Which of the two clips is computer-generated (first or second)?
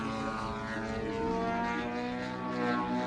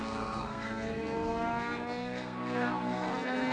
second